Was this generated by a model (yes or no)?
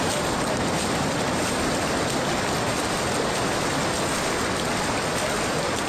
no